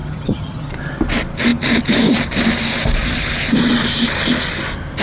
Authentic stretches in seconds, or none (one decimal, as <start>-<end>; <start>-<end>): 0.7-5.0